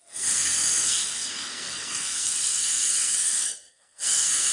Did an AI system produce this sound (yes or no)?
yes